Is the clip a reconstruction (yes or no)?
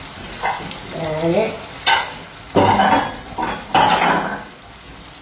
no